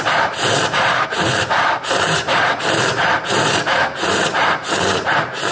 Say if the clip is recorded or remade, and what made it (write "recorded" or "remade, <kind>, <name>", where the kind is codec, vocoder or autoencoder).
remade, vocoder, BigVGAN v2